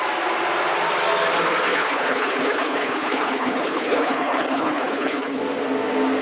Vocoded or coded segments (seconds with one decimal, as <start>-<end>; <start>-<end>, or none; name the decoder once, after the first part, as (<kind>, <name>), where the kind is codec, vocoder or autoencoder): 1.7-5.4 (codec, HILCodec)